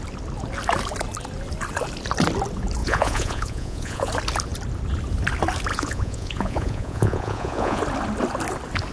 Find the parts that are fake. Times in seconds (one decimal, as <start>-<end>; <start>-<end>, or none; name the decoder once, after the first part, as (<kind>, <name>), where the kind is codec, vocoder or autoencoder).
2.8-4.1 (vocoder, Vocos); 5.7-7.8

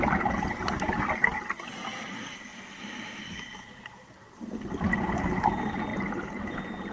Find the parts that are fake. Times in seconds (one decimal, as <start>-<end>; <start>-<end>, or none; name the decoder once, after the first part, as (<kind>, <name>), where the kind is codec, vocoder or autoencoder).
5.9-6.9 (vocoder, BigVGAN v2)

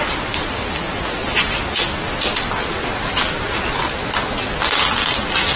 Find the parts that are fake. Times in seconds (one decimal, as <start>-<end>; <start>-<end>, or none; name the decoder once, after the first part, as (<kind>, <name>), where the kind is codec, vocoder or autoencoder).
none

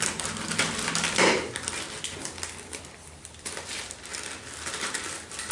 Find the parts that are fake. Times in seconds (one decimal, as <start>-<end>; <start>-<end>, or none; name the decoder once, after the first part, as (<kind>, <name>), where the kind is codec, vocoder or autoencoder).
none

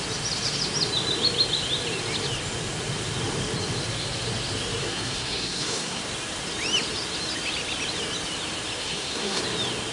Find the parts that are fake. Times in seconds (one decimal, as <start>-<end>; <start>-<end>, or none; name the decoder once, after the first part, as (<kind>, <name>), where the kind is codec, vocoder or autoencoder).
4.8-6.0 (codec, SNAC); 8.8-9.4